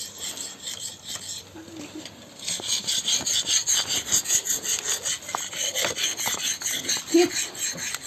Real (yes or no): yes